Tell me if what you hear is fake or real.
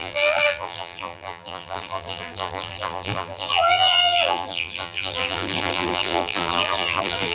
fake